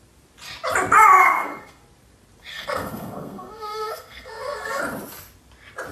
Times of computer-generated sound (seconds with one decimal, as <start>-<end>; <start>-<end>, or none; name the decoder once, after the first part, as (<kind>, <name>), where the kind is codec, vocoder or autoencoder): 1.2-1.8 (codec, SNAC); 2.5-4.8